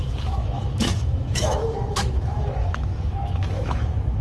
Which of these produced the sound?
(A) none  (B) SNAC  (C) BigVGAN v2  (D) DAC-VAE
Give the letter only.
D